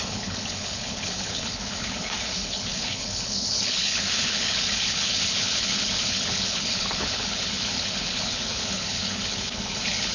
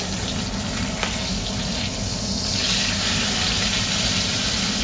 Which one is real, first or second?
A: second